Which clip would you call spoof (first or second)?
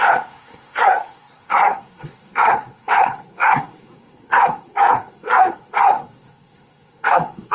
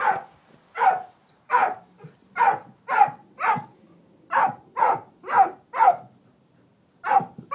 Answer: first